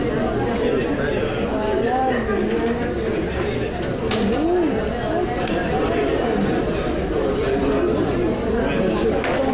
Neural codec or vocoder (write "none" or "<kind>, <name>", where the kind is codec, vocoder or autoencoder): none